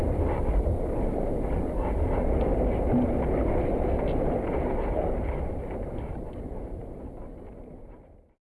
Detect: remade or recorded recorded